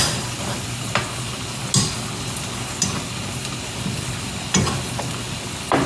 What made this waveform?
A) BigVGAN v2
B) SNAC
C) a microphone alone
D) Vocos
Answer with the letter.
C